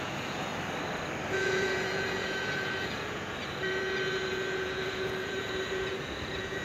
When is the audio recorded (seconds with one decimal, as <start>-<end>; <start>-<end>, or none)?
0.5-1.3